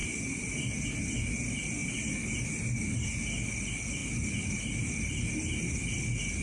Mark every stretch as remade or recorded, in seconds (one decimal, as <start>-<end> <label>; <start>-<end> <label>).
0.0-0.6 remade; 0.6-6.4 recorded